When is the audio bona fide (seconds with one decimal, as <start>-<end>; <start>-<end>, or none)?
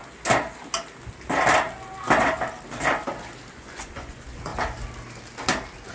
0.0-3.5; 4.5-5.9